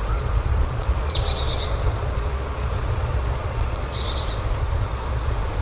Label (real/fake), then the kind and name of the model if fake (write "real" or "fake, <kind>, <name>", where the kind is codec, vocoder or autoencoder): fake, vocoder, Vocos